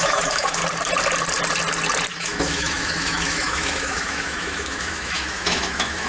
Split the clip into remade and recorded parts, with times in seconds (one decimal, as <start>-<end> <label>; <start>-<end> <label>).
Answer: 0.0-0.6 remade; 0.6-2.1 recorded; 2.1-6.1 remade